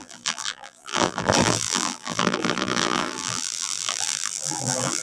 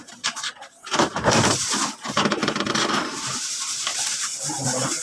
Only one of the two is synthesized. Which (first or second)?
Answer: first